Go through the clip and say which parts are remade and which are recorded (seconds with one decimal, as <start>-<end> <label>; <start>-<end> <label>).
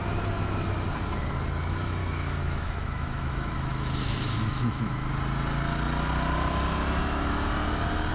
0.0-2.0 recorded; 2.0-5.1 remade; 5.1-8.1 recorded